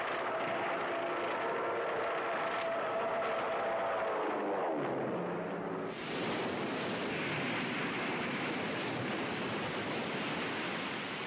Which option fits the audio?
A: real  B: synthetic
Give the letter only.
A